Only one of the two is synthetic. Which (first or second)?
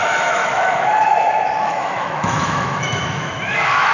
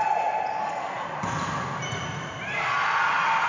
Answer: first